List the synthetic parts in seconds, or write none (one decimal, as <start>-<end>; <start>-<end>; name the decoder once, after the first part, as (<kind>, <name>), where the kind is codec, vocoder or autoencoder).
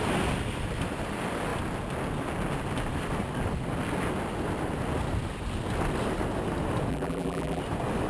6.9-7.6 (vocoder, BigVGAN v2)